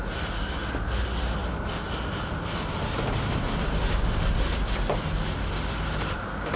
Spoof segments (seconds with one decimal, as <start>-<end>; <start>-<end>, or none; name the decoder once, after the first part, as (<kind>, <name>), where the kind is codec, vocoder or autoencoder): none